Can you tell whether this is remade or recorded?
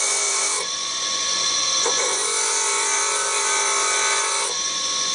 remade